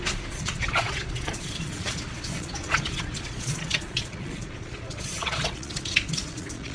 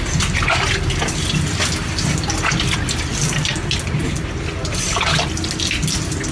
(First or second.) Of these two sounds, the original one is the second